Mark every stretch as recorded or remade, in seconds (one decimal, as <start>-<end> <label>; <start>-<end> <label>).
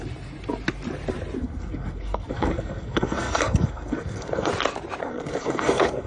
0.0-1.4 recorded; 1.4-4.5 remade; 4.5-5.0 recorded; 5.0-6.1 remade